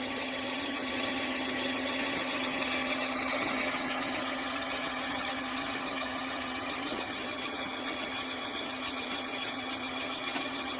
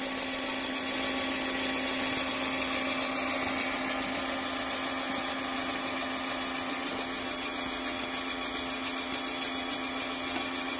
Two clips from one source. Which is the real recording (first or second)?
second